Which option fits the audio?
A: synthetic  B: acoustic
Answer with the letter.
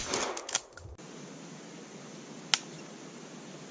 B